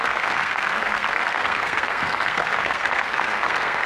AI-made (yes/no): yes